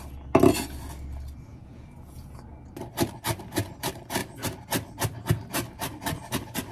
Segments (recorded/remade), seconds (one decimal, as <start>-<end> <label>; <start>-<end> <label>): 0.0-1.5 recorded; 1.5-2.4 remade; 2.4-6.7 recorded